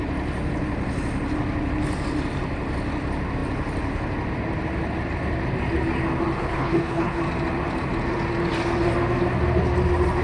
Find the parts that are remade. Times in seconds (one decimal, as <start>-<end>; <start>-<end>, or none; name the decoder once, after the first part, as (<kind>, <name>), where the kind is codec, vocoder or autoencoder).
6.4-7.2 (codec, HILCodec)